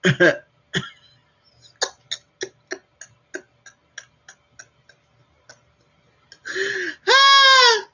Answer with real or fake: real